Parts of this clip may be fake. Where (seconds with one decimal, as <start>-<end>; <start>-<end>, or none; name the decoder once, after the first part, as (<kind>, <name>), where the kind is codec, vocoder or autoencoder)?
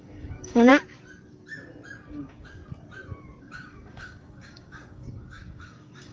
0.0-0.7 (codec, DAC); 2.2-2.6; 3.4-6.1